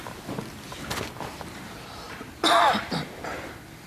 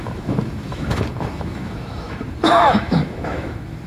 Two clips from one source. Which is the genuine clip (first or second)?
first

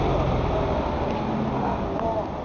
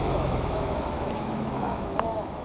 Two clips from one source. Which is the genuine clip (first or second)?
first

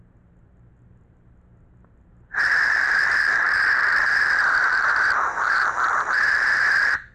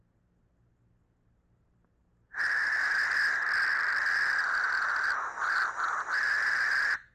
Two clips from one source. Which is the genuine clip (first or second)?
second